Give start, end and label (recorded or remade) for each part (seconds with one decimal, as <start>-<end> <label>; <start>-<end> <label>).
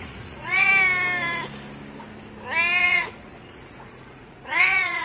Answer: 0.0-0.7 remade; 0.7-2.8 recorded; 2.8-5.0 remade